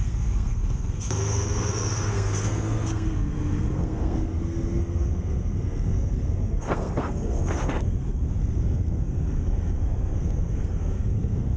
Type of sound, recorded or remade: remade